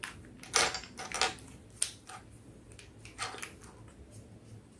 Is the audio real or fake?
real